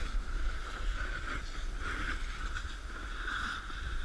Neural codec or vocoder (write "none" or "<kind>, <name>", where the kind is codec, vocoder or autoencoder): none